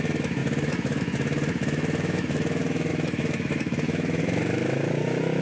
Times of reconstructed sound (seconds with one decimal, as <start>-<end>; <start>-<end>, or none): 0.0-5.4